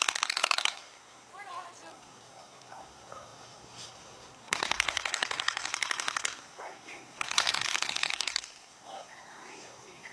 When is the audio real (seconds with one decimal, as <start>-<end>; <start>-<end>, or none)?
1.3-1.9